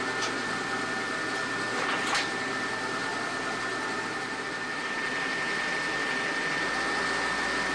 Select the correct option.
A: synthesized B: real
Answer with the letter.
B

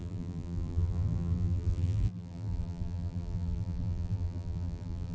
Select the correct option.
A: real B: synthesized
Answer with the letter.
B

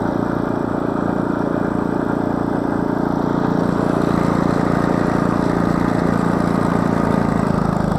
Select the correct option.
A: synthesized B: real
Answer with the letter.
B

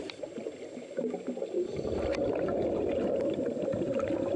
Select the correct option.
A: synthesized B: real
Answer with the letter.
B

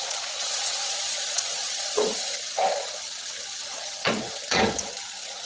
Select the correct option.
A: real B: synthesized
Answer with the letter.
B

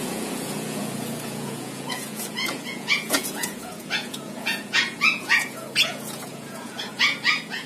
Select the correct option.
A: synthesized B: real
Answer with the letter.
A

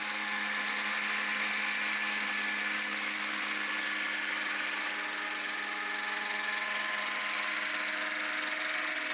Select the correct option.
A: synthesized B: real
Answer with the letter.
B